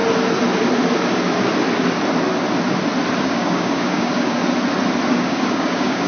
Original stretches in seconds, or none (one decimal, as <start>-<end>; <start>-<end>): 0.0-3.2; 4.4-5.1